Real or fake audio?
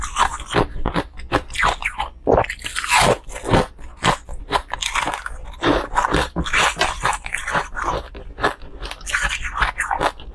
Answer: real